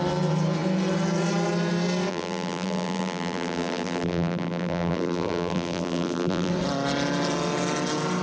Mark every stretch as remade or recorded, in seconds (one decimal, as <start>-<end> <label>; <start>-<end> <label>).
0.0-2.1 recorded; 2.1-6.5 remade; 6.5-8.2 recorded